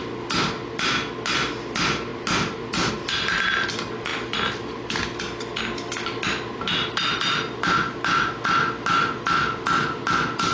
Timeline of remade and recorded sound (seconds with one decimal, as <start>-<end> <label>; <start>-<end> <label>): 0.0-10.5 recorded